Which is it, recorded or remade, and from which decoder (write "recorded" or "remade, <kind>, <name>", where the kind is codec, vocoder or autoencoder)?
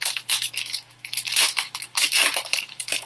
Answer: remade, autoencoder, DAC-VAE